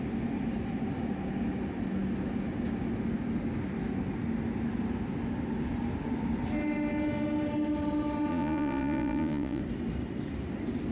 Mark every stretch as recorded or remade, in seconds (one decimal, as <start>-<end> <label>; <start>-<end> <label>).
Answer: 0.0-8.3 recorded; 8.3-9.6 remade; 9.6-10.9 recorded